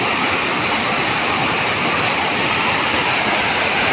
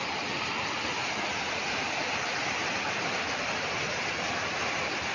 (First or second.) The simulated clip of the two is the first